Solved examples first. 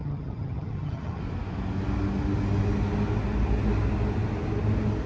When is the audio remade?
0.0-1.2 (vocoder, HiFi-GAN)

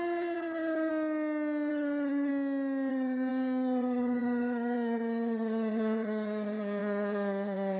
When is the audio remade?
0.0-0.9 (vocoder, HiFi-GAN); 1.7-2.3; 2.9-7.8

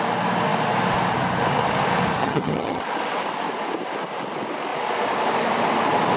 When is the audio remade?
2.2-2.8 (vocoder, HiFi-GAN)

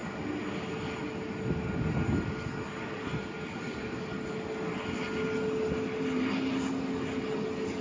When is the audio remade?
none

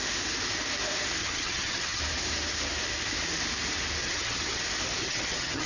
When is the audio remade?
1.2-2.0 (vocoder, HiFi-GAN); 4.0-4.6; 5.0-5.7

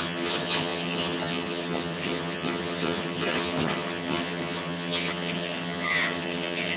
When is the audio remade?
0.0-6.8 (vocoder, HiFi-GAN)

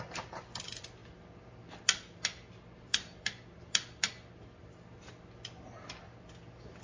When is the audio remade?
none

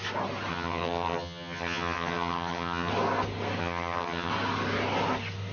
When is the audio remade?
0.5-2.9 (vocoder, HiFi-GAN); 3.6-4.3